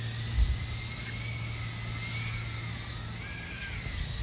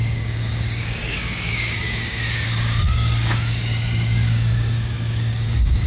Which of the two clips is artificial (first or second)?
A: second